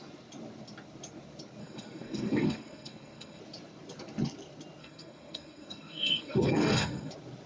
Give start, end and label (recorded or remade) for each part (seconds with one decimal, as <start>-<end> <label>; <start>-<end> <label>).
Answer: 0.0-1.6 recorded; 1.6-3.4 remade; 3.4-4.8 recorded; 4.8-7.1 remade; 7.1-7.5 recorded